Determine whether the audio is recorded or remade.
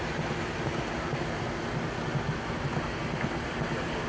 recorded